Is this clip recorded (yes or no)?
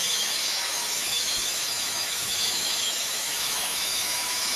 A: no